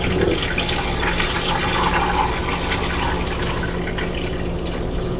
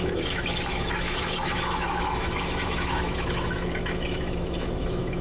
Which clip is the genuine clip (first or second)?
first